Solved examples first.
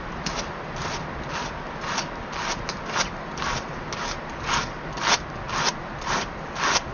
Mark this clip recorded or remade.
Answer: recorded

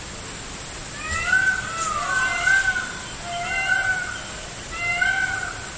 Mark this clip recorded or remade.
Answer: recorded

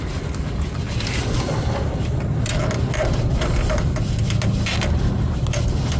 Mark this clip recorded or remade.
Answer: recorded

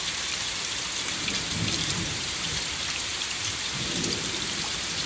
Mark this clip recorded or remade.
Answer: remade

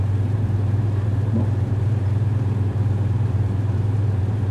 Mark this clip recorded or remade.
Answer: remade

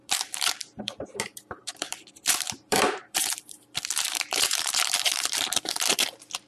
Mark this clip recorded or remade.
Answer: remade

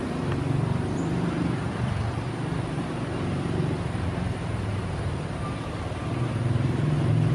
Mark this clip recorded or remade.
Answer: remade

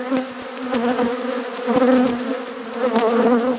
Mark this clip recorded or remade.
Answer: recorded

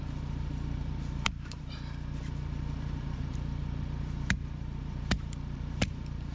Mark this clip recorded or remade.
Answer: remade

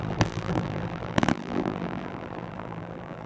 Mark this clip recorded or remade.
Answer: remade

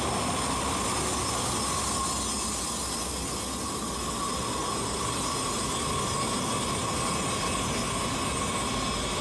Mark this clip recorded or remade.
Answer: recorded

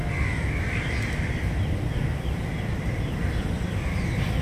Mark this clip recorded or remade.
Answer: remade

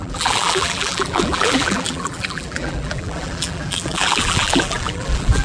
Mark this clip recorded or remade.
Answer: remade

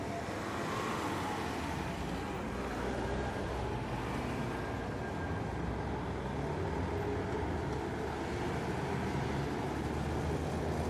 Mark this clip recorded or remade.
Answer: recorded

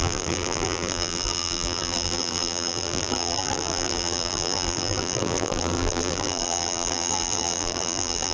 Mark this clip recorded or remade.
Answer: remade